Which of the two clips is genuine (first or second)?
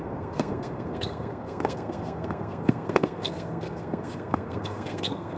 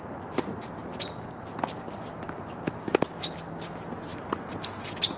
second